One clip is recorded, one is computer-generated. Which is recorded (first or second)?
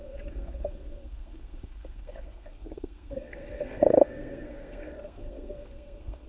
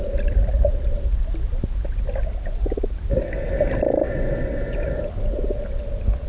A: second